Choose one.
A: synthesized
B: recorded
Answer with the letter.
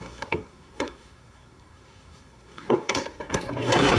A